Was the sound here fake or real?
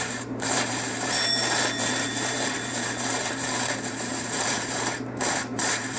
fake